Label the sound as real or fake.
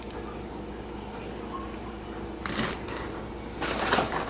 real